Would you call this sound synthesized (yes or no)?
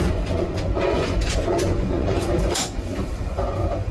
yes